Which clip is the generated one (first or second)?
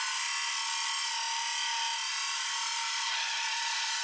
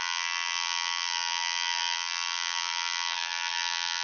second